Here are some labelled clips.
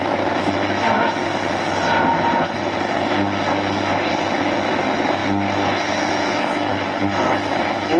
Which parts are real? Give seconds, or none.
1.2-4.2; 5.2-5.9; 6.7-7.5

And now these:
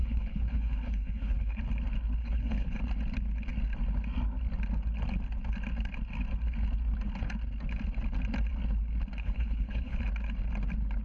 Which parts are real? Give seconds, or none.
1.6-2.2; 2.8-9.2; 10.0-11.0

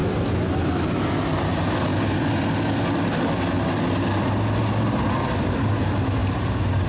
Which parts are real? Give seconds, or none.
0.0-6.9

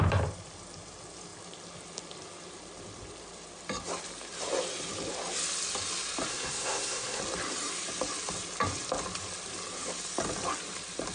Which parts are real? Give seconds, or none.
0.0-6.3; 7.2-11.1